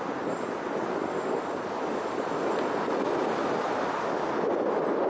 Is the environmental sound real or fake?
real